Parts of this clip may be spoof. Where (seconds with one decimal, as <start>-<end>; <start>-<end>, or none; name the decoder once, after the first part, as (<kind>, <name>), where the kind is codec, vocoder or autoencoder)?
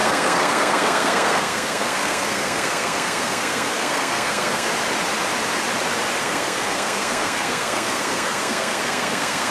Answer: 0.0-4.7 (codec, SNAC); 6.2-9.5